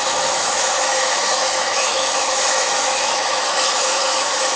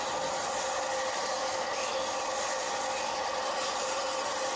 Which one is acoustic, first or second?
second